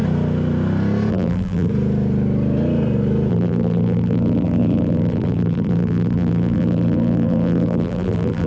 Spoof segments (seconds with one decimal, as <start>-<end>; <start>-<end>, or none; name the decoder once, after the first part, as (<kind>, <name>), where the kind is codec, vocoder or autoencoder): 1.1-1.7 (vocoder, BigVGAN v2); 3.3-8.5